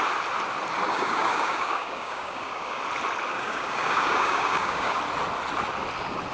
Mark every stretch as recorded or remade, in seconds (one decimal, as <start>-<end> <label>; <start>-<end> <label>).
0.0-0.9 recorded; 0.9-2.8 remade; 2.8-3.3 recorded; 3.3-5.0 remade; 5.0-6.3 recorded